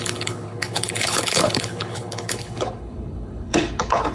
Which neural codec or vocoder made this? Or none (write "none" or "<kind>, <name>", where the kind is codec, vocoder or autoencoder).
codec, HILCodec